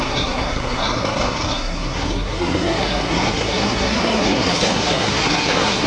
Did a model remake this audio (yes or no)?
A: yes